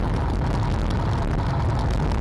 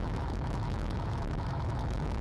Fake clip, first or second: second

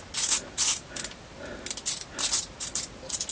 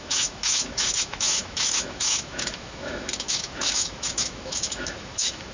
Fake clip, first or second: second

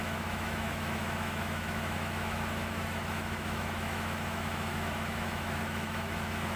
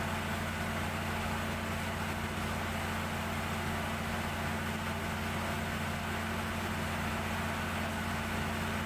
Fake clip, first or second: first